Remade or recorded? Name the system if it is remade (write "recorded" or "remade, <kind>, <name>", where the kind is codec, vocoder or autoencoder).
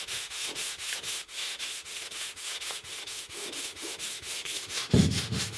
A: remade, autoencoder, DAC-VAE